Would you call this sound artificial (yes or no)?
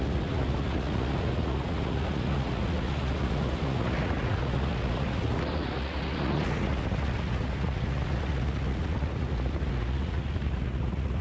yes